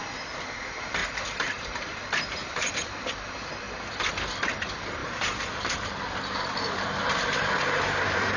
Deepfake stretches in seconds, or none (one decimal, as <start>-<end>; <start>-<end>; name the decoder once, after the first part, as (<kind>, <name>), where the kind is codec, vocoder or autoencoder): 2.4-3.5 (vocoder, BigVGAN v2); 5.0-8.4